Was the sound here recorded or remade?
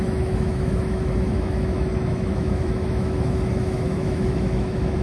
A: remade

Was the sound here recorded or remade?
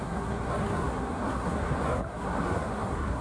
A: remade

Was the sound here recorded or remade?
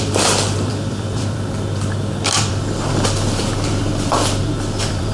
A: remade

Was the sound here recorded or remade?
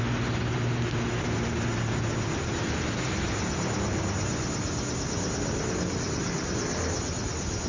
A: recorded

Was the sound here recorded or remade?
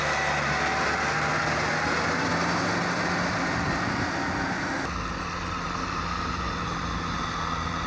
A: recorded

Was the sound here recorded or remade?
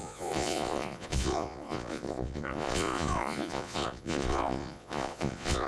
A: remade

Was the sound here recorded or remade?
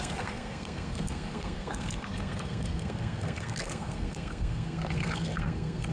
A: remade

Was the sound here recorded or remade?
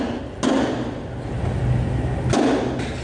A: recorded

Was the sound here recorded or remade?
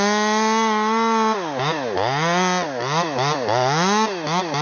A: recorded